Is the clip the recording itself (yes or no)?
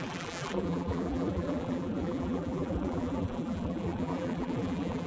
no